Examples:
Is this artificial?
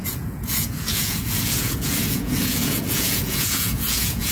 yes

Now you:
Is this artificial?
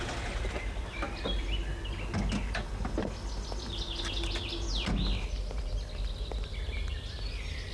no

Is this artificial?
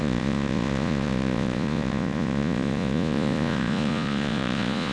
yes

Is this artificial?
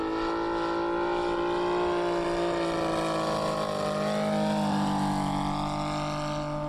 no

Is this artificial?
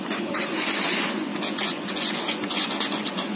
yes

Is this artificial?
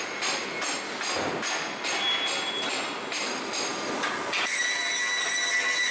no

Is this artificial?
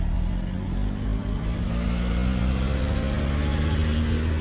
no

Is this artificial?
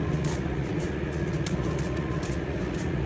yes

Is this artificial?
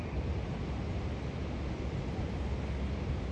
no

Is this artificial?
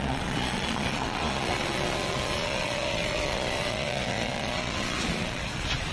yes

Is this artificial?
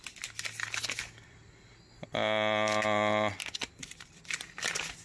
no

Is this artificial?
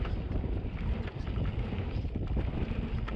no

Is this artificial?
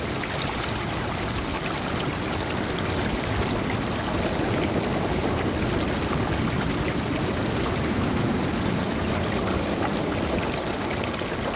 no